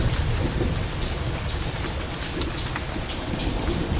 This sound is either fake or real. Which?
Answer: real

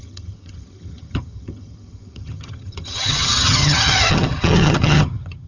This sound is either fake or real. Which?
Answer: fake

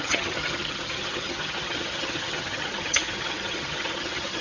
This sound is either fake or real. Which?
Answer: fake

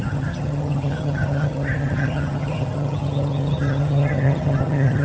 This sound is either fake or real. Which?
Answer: fake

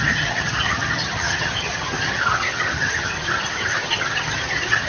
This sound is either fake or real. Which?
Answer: fake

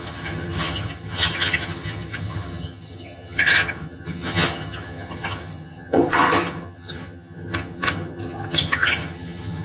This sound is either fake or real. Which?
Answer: fake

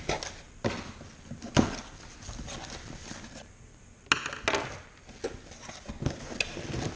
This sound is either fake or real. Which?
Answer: real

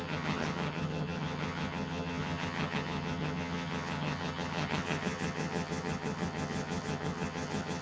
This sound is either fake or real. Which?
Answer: fake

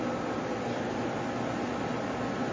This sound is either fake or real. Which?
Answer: real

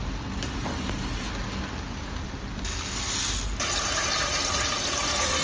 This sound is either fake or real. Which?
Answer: real